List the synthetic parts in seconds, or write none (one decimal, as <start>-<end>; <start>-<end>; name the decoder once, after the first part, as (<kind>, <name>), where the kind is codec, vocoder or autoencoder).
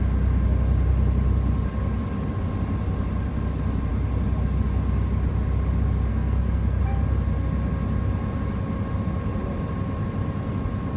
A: 6.1-6.8 (codec, SNAC)